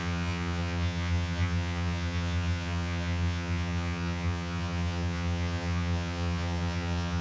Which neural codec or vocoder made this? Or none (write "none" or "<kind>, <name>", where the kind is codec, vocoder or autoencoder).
vocoder, HiFi-GAN